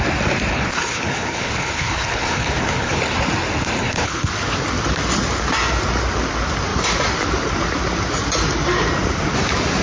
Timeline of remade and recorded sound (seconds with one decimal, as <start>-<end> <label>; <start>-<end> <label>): 0.0-0.5 recorded; 0.5-3.0 remade; 3.0-3.8 recorded; 3.8-4.3 remade; 4.3-9.8 recorded